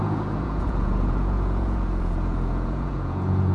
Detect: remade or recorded remade